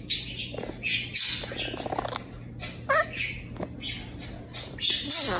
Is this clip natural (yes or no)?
yes